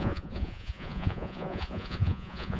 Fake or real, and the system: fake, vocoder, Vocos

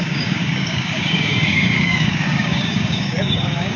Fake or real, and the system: fake, codec, DAC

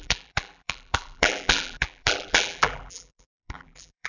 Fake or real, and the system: fake, vocoder, BigVGAN v2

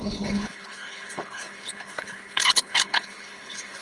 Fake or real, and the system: fake, codec, HILCodec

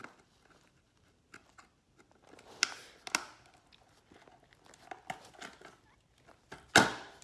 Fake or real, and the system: real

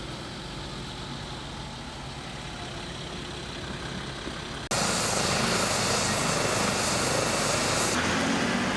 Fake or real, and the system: real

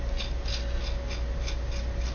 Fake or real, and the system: real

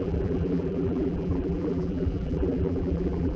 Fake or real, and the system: fake, vocoder, BigVGAN v2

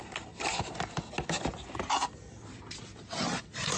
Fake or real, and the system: real